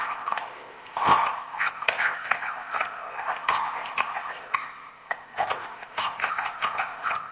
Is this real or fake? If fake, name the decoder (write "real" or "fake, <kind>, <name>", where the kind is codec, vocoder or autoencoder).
fake, codec, ZipCodec